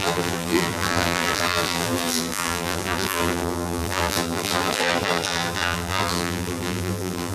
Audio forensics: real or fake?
fake